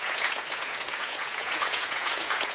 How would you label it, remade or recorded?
remade